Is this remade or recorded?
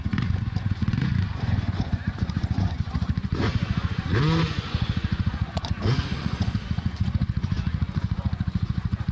remade